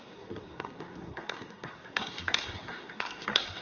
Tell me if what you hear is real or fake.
fake